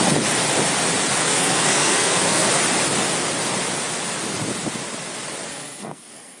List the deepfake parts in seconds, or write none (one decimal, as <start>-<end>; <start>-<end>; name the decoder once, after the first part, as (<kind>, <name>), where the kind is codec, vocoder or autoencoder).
1.2-2.5 (codec, SNAC); 5.5-6.4